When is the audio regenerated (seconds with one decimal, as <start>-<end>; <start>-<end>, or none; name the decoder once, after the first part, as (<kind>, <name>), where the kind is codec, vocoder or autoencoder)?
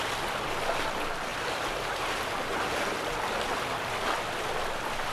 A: 1.3-3.9 (vocoder, BigVGAN v2)